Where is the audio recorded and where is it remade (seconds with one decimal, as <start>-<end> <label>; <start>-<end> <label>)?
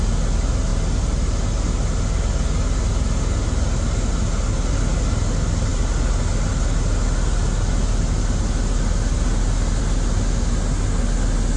0.0-11.6 recorded